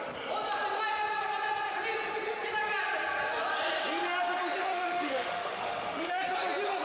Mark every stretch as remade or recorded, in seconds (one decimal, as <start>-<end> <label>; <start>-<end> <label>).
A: 0.0-4.7 recorded; 4.7-6.1 remade; 6.1-6.8 recorded